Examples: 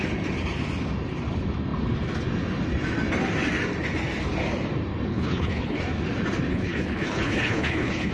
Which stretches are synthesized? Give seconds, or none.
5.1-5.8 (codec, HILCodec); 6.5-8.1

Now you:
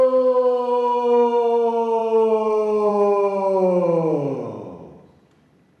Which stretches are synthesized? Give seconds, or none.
none

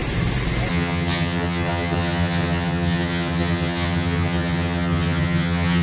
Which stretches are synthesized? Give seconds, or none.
0.7-5.8 (vocoder, HiFi-GAN)